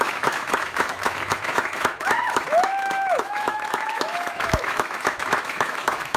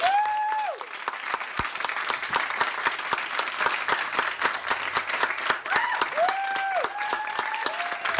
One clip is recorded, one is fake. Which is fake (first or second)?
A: first